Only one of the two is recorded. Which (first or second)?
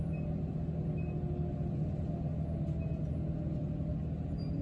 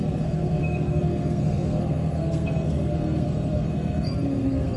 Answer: first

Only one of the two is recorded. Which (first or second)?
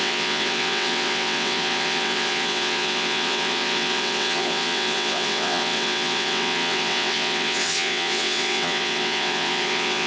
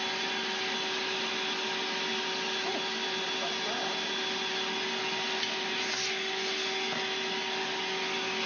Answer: second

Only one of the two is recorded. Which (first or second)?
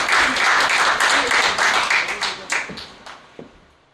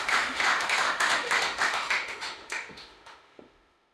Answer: first